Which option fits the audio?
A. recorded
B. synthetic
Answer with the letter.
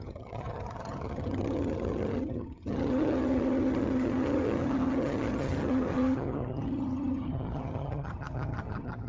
B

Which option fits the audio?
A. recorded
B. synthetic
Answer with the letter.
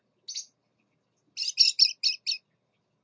A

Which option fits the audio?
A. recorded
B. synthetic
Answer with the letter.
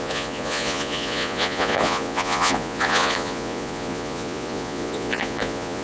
B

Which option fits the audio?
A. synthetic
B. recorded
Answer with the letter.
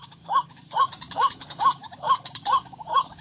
A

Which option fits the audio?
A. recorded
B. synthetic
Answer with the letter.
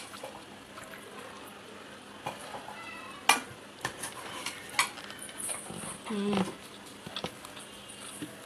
A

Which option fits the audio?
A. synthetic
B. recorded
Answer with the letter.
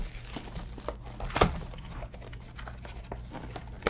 B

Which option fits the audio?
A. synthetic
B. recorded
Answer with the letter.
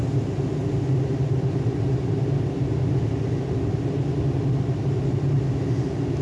B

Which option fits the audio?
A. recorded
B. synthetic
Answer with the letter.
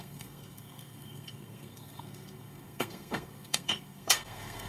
B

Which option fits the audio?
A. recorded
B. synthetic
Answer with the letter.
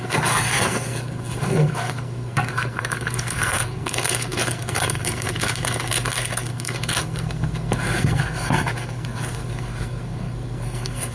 B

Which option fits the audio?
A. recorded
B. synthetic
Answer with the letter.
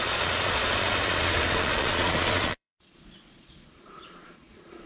B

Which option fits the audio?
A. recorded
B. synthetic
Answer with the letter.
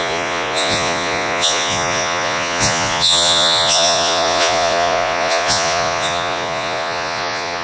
B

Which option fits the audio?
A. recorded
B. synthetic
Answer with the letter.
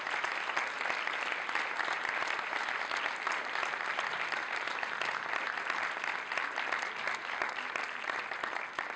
A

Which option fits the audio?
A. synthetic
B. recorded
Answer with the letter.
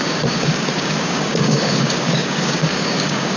A